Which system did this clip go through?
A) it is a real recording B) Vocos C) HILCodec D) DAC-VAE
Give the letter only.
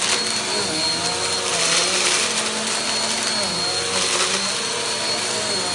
A